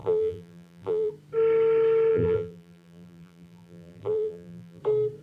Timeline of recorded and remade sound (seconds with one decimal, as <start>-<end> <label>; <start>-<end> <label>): 0.0-1.1 remade; 1.1-2.1 recorded; 2.1-4.8 remade; 4.8-5.2 recorded